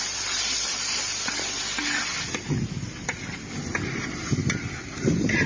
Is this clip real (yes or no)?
yes